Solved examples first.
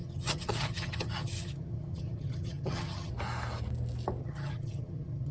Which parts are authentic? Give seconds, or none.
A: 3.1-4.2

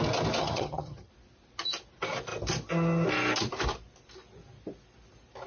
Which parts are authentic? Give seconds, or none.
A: 0.0-0.4; 1.1-5.5

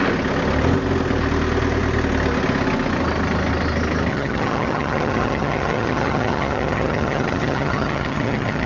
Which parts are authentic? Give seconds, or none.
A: 0.0-4.1

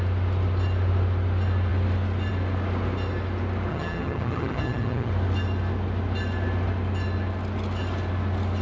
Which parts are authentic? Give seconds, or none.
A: 0.0-3.7; 5.1-8.6

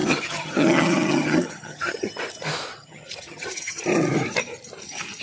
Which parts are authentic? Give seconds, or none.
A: 2.1-2.7; 3.8-5.2

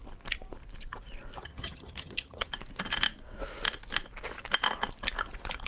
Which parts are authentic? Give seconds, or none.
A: 0.0-1.4; 2.5-5.7

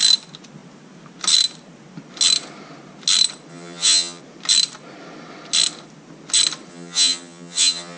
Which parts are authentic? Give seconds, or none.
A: 0.0-3.5; 4.2-6.7

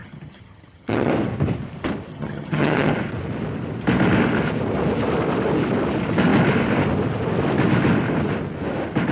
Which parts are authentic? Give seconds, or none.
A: 1.1-2.1; 2.9-9.1